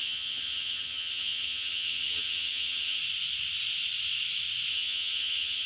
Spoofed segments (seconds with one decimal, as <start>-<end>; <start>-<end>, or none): 0.0-3.0; 4.7-5.7

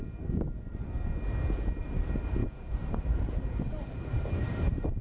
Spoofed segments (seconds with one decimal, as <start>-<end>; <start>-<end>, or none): 1.8-5.0

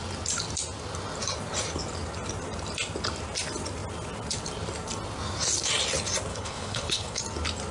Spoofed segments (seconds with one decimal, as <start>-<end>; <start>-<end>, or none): 6.3-7.2

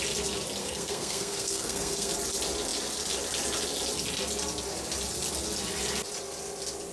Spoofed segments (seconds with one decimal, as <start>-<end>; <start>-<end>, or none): 0.6-2.1

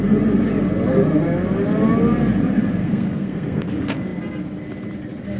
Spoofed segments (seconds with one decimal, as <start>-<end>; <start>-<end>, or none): 2.8-3.6

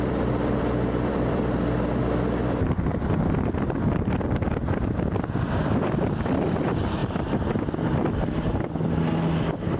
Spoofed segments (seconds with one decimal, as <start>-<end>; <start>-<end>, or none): 0.0-9.8

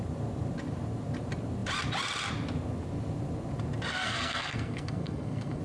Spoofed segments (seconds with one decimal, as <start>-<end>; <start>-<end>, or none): 3.9-5.6